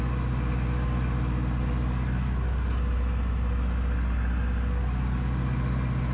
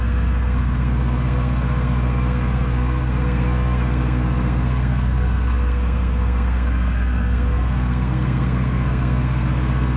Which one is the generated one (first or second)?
second